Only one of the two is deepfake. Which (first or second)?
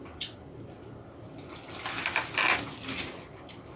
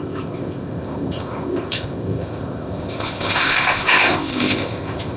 second